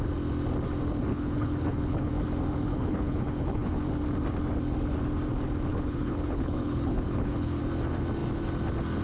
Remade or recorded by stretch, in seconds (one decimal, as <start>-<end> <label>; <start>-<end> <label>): 0.0-1.1 recorded; 1.1-2.1 remade; 2.1-2.7 recorded; 2.7-3.8 remade; 3.8-5.7 recorded; 5.7-7.6 remade; 7.6-9.0 recorded